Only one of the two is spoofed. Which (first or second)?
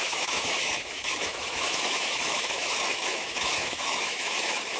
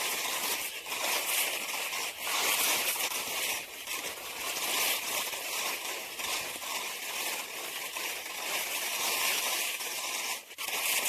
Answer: first